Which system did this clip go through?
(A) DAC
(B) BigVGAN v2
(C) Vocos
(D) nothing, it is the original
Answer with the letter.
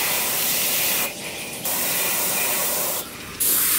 B